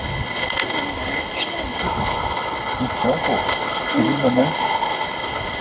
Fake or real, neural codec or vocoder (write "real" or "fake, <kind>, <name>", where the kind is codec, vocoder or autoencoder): fake, codec, HILCodec